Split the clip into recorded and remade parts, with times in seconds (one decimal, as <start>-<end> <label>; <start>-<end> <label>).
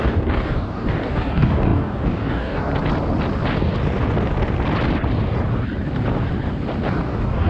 0.0-2.7 remade; 2.7-7.0 recorded; 7.0-7.5 remade